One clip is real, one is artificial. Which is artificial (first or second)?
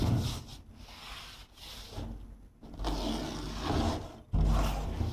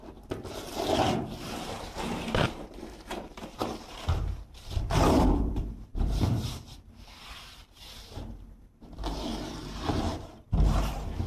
second